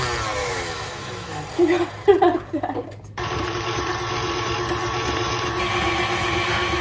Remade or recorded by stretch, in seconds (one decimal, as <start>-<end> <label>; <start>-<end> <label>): 0.0-0.4 recorded; 0.4-1.4 remade; 1.4-6.8 recorded

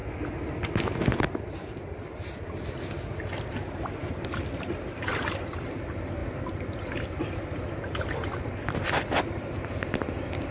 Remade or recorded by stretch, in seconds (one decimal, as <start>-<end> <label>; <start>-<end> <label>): 0.0-10.5 recorded

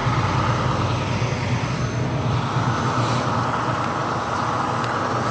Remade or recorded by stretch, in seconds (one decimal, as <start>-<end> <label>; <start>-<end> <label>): 0.0-5.3 recorded

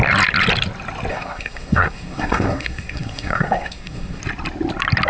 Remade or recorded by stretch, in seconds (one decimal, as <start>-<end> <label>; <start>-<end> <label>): 0.0-1.1 recorded; 1.1-4.2 remade; 4.2-5.1 recorded

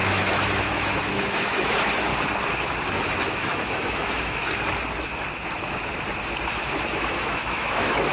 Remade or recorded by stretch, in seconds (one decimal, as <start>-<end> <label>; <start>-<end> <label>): 0.0-2.1 remade; 2.1-3.3 recorded; 3.3-4.4 remade; 4.4-6.9 recorded; 6.9-8.1 remade

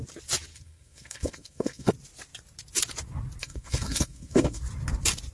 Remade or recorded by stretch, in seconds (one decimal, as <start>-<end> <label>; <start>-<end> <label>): 0.0-0.5 recorded; 0.5-1.9 remade; 1.9-3.4 recorded; 3.4-4.6 remade; 4.6-5.3 recorded

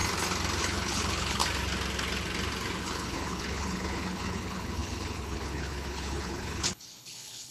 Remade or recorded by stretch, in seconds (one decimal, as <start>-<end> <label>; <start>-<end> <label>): 0.0-0.6 recorded; 0.6-1.4 remade; 1.4-2.8 recorded; 2.8-7.5 remade

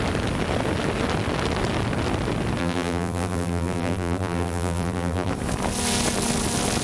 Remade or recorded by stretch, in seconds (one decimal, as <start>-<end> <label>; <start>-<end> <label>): 0.0-2.6 recorded; 2.6-5.3 remade; 5.3-6.8 recorded